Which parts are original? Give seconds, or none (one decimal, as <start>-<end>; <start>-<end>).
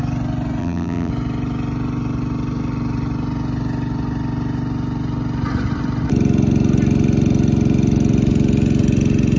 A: 0.0-0.6; 1.1-9.4